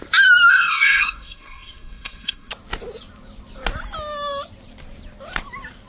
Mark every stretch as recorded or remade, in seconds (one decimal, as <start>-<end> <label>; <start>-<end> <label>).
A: 0.0-0.5 recorded; 0.5-2.5 remade; 2.5-5.9 recorded